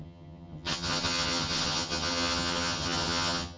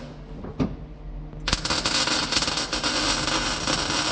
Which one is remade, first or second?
first